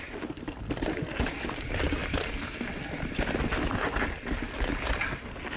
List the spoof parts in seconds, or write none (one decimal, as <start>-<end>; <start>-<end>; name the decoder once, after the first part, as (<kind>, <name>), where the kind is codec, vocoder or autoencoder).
none